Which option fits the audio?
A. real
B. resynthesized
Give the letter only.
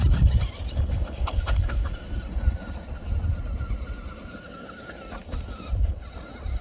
A